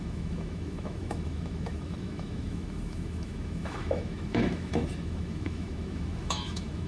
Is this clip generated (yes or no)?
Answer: yes